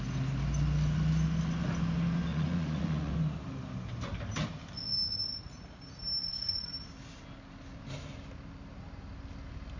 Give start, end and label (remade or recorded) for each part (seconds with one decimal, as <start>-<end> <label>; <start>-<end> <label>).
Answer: 0.0-2.3 recorded; 2.3-3.1 remade; 3.1-6.2 recorded; 6.2-6.7 remade; 6.7-9.8 recorded